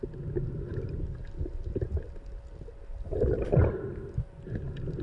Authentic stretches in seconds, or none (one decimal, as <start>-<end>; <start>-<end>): 0.0-5.0